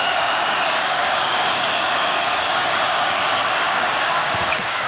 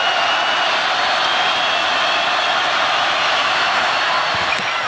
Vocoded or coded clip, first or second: first